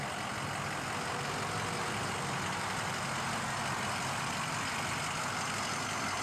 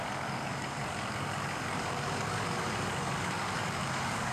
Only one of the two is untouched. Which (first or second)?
first